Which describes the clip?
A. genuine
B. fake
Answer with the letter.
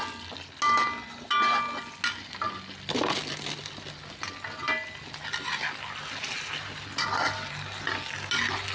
A